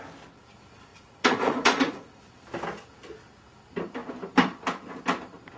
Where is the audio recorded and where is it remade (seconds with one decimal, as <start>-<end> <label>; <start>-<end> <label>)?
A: 0.0-0.9 recorded; 0.9-2.2 remade; 2.2-5.6 recorded